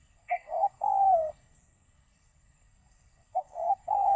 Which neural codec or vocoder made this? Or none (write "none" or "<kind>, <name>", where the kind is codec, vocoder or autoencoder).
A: codec, SNAC